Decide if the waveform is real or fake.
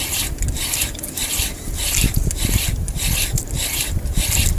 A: real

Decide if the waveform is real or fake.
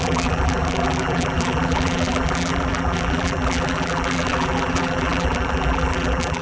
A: fake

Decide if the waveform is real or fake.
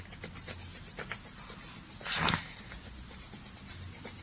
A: real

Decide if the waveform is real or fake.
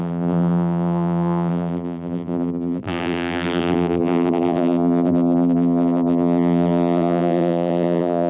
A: fake